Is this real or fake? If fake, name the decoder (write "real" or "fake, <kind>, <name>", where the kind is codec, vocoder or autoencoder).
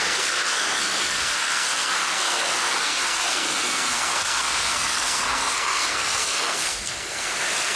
fake, codec, SNAC